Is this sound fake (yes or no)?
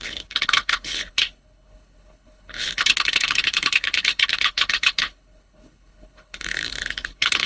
yes